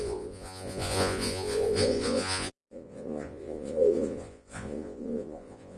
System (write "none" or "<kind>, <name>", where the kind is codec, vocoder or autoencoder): vocoder, Vocos